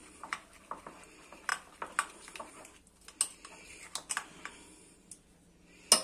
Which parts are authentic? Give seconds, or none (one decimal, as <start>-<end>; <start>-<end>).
0.0-6.0